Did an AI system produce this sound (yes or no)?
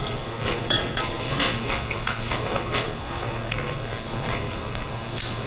yes